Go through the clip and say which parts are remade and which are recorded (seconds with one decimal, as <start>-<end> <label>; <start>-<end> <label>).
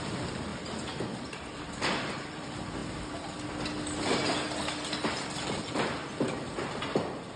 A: 0.0-0.5 remade; 0.5-1.3 recorded; 1.3-2.8 remade; 2.8-5.0 recorded; 5.0-7.4 remade